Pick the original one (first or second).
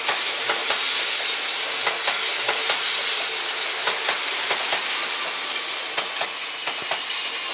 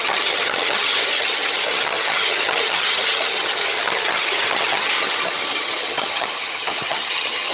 first